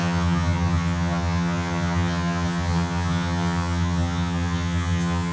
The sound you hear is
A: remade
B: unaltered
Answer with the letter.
A